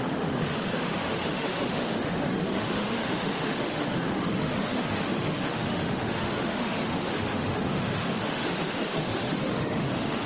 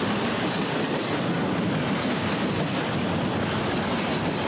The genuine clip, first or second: second